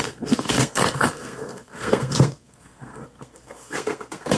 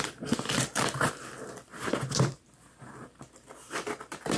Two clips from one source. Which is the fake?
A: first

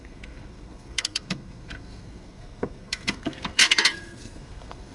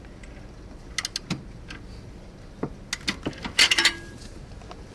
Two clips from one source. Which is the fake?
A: first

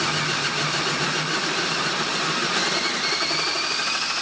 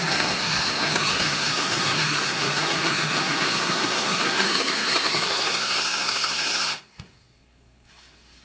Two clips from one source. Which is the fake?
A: second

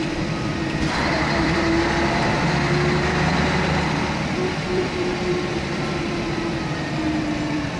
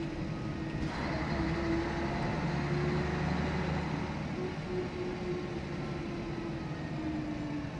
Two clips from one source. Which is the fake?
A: first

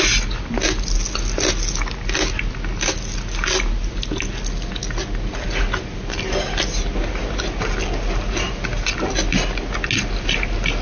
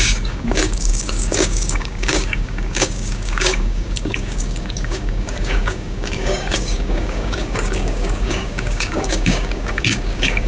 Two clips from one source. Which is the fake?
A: second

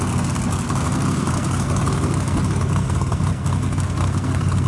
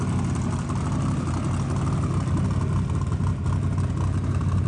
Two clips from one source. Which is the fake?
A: first